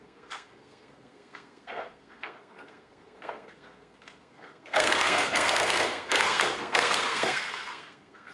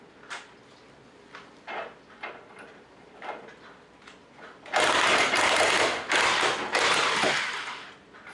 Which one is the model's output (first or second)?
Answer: first